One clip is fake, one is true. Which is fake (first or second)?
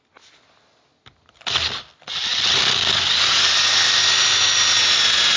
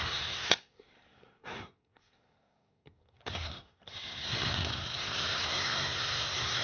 second